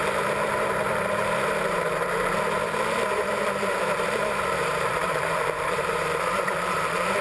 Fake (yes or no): yes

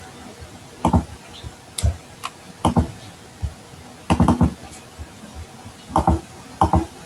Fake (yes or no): no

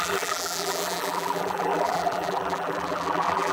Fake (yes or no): yes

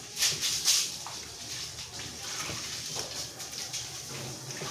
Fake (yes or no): no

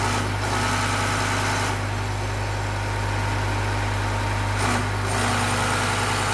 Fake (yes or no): no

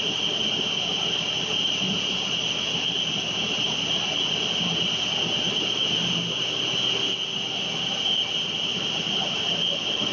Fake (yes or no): no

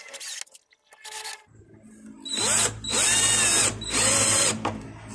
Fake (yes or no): no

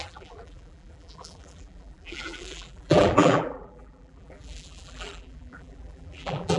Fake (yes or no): yes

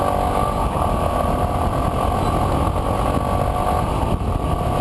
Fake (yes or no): no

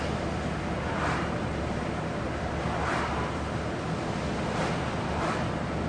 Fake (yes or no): yes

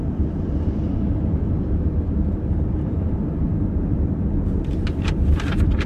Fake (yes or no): yes